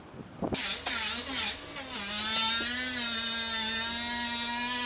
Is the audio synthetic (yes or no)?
no